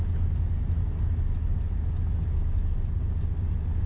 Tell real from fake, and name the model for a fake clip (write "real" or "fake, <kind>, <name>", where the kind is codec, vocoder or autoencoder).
real